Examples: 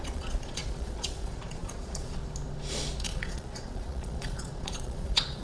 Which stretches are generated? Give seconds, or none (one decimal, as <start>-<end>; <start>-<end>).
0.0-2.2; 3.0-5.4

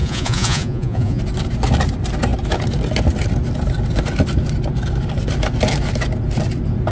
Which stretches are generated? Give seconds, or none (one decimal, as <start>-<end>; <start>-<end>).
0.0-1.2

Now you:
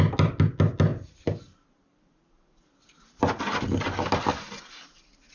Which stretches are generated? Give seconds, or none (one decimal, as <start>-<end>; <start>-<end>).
none

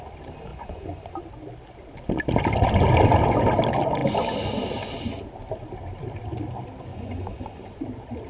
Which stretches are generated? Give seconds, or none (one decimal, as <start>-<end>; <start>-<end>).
0.5-1.3; 6.9-7.8

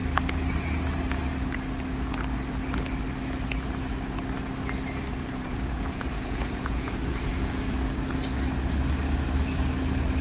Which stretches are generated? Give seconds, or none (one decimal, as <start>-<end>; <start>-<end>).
5.2-7.6

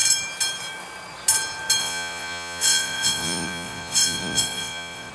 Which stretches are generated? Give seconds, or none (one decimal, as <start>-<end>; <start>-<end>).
1.8-5.1